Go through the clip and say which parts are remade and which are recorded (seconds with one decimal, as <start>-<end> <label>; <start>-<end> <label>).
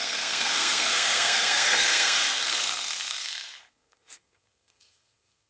0.0-5.5 remade